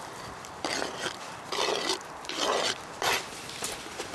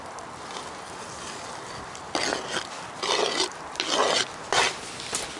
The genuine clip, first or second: second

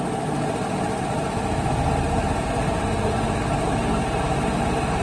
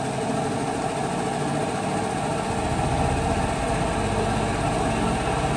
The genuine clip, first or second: second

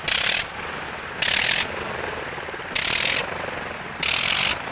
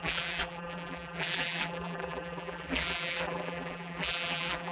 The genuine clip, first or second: first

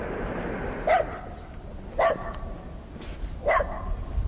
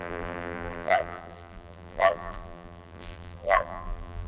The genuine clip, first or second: first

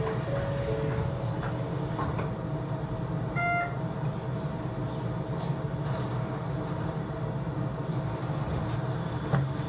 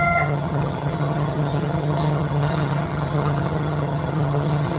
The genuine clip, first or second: first